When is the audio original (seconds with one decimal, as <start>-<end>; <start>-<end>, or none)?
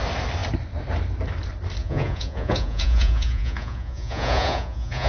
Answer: 0.0-1.8